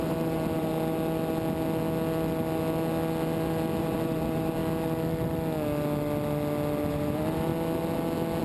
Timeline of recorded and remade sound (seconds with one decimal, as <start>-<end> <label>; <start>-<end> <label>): 0.0-0.7 remade; 0.7-3.8 recorded; 3.8-4.6 remade; 4.6-6.9 recorded; 6.9-7.5 remade; 7.5-8.4 recorded